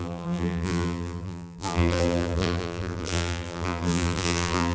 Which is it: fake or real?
fake